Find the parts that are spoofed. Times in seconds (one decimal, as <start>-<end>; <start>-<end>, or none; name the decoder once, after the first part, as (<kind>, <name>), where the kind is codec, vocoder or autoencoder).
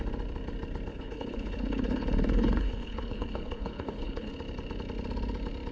0.9-4.3 (codec, HILCodec)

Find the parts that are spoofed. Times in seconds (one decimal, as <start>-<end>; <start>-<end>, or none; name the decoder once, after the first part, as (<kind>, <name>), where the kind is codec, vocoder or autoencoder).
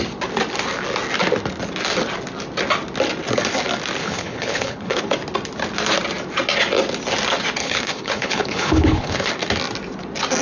4.0-5.0 (codec, HILCodec); 7.6-9.3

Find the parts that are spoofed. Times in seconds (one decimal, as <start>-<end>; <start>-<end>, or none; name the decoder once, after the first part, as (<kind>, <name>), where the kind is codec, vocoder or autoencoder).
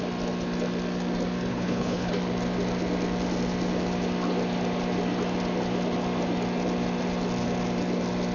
1.5-2.1 (codec, HILCodec)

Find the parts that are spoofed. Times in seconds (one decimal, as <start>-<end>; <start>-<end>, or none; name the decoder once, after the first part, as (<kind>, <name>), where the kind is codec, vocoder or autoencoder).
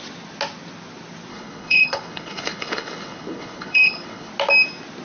1.3-4.3 (codec, HILCodec)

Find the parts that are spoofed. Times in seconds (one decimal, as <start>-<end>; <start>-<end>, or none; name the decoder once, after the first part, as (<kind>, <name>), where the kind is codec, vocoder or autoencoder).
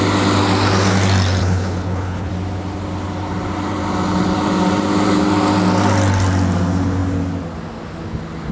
1.4-2.3 (codec, HILCodec)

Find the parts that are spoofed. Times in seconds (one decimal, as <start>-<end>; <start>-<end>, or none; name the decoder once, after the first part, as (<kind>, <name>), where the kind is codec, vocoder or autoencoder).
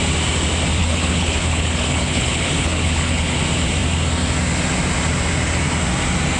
0.8-3.4 (codec, HILCodec)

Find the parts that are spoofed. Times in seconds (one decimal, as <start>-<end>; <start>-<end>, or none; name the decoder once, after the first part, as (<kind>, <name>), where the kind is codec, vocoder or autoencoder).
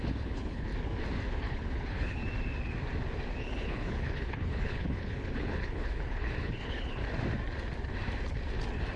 0.0-0.7 (codec, HILCodec); 1.4-2.2; 3.4-7.0